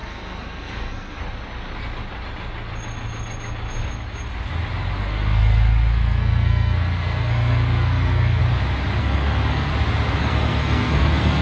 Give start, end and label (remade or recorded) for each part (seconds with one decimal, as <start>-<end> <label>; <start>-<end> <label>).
0.0-1.2 remade; 1.2-5.0 recorded; 5.0-8.4 remade; 8.4-9.0 recorded; 9.0-9.7 remade; 9.7-10.2 recorded; 10.2-11.4 remade